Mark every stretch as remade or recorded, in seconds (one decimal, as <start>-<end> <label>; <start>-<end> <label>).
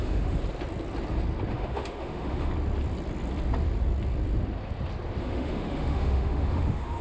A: 0.0-0.4 remade; 0.4-1.5 recorded; 1.5-2.5 remade; 2.5-5.2 recorded; 5.2-7.0 remade